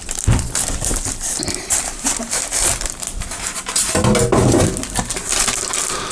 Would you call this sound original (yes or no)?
yes